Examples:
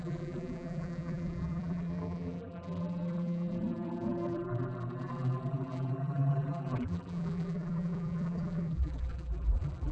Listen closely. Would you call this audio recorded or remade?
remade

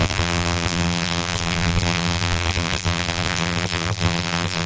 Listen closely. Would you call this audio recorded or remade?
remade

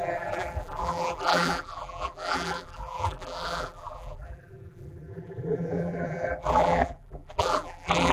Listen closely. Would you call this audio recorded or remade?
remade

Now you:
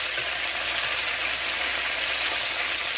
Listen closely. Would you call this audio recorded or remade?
recorded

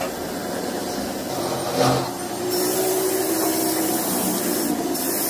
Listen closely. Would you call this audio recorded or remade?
recorded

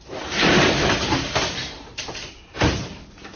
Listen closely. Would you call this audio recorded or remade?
remade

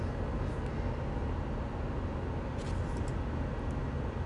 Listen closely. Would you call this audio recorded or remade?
recorded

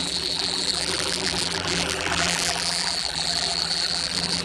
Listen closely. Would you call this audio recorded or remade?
remade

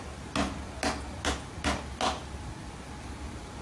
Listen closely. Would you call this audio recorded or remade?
recorded